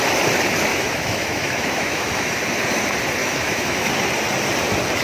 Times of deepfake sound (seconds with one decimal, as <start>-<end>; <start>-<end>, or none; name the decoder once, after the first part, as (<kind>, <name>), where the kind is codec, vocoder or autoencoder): 0.7-2.4 (autoencoder, DAC-VAE); 3.2-3.9

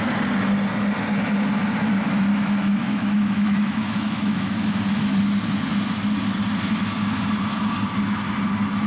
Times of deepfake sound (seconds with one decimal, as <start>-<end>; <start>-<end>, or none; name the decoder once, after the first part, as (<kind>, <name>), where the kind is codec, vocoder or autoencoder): 2.3-5.2 (autoencoder, DAC-VAE)